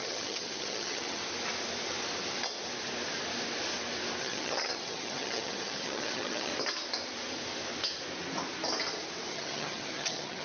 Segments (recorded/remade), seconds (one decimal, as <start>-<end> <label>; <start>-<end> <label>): 0.0-1.2 remade; 1.2-4.2 recorded; 4.2-6.5 remade; 6.5-9.3 recorded; 9.3-10.4 remade